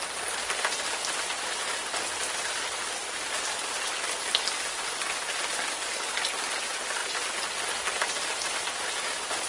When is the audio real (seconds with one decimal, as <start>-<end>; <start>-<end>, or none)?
0.0-9.5